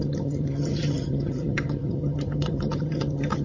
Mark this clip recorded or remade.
remade